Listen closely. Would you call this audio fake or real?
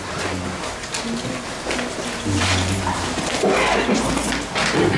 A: real